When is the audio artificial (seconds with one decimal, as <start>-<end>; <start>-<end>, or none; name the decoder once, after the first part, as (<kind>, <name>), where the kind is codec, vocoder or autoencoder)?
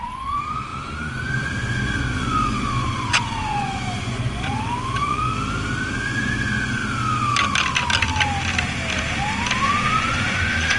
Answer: 0.0-5.3 (vocoder, Vocos); 5.9-6.8; 9.6-10.8